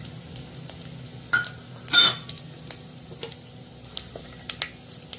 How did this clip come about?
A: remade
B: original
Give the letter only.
B